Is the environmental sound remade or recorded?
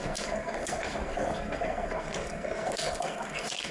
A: remade